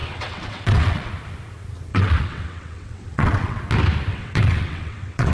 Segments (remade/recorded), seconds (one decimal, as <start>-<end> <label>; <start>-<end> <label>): 0.0-1.1 remade; 1.1-1.9 recorded; 1.9-3.6 remade; 3.6-4.1 recorded; 4.1-5.3 remade